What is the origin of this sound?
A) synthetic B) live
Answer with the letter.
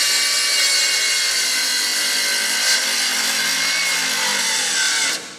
B